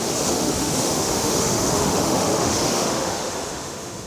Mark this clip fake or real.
fake